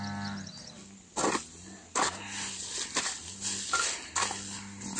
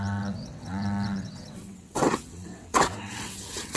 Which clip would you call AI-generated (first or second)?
second